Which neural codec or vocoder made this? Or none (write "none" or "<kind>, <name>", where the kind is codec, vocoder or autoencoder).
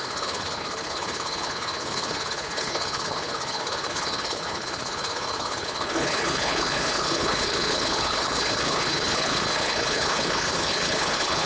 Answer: codec, HILCodec